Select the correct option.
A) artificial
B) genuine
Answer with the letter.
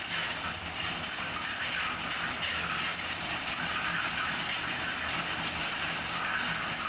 B